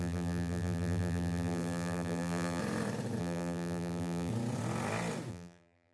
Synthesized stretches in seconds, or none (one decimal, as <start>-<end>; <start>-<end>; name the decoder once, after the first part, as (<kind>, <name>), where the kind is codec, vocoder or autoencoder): 0.0-2.6 (vocoder, BigVGAN v2); 3.2-4.3; 5.3-5.9